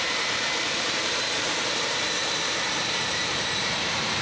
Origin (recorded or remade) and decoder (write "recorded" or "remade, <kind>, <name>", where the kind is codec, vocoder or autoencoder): remade, vocoder, BigVGAN v2